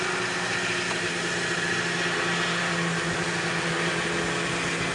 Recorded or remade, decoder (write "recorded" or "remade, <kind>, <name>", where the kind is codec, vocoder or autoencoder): recorded